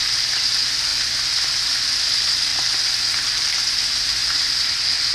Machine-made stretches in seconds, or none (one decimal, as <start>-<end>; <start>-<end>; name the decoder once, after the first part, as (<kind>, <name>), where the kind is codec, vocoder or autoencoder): 2.5-3.8 (vocoder, BigVGAN v2)